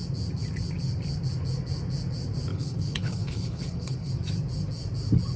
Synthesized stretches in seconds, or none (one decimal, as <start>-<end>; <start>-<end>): 2.5-4.1